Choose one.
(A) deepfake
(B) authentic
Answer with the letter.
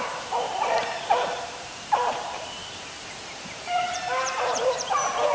A